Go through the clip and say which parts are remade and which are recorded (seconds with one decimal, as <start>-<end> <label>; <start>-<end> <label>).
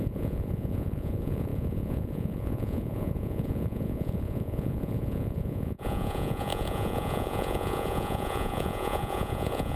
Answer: 0.0-9.8 remade